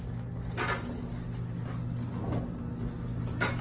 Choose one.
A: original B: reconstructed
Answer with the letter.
A